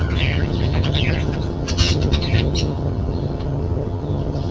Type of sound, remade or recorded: remade